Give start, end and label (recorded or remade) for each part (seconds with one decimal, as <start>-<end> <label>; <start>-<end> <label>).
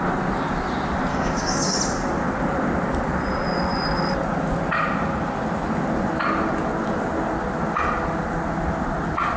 0.0-1.1 recorded; 1.1-1.8 remade; 1.8-9.4 recorded